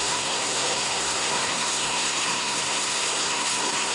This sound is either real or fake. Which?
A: fake